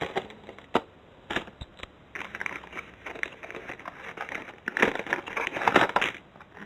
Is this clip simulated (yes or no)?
no